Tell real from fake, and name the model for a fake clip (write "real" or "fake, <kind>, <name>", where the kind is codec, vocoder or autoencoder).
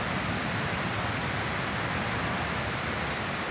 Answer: real